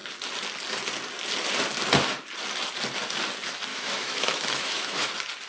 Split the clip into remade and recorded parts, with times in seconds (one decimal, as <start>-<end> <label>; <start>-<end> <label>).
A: 0.0-3.7 recorded; 3.7-5.1 remade; 5.1-5.5 recorded